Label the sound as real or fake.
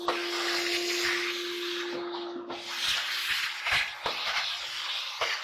real